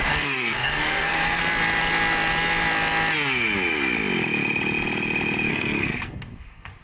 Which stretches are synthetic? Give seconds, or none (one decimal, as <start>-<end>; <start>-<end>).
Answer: 0.0-1.4; 5.5-6.8